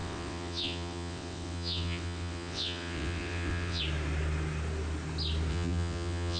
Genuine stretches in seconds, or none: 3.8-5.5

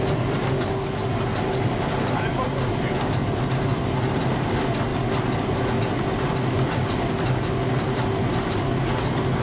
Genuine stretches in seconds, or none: 0.0-3.2; 3.8-9.4

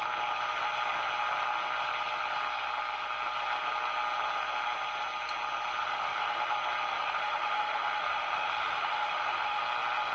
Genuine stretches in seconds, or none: 0.0-5.8; 6.5-6.9; 9.6-10.1

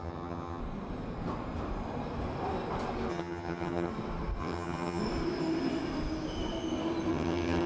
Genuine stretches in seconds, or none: 0.6-3.1; 3.9-4.4; 5.0-7.1

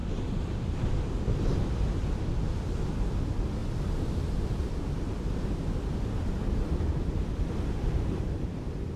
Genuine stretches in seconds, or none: 0.0-3.6

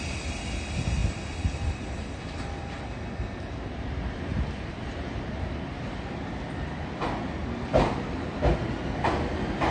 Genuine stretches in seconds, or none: 0.0-9.7

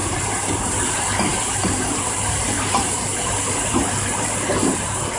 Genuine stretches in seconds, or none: none

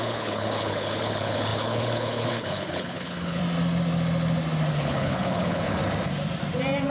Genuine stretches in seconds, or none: 3.4-4.7; 5.8-6.9